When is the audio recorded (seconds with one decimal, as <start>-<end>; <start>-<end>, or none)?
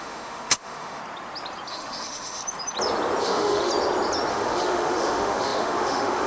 1.0-1.7; 2.4-3.2; 3.7-4.3